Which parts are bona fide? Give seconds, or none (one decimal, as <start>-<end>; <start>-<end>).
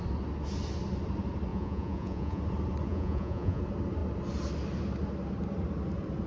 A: 0.0-1.5; 2.4-2.9; 3.6-6.3